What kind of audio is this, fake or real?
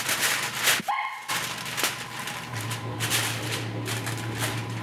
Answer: real